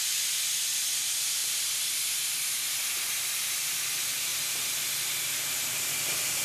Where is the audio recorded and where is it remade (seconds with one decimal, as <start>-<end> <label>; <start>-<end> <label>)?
0.0-1.4 recorded; 1.4-2.9 remade; 2.9-4.3 recorded; 4.3-5.4 remade; 5.4-6.4 recorded